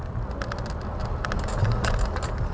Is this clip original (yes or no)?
yes